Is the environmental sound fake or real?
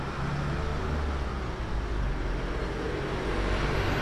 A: real